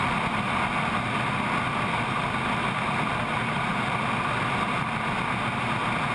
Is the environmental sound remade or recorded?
recorded